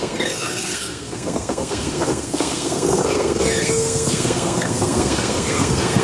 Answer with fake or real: fake